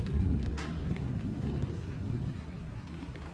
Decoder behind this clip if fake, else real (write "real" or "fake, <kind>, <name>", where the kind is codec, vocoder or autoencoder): fake, codec, SNAC